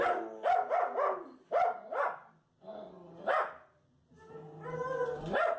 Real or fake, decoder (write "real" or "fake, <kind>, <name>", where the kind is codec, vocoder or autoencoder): real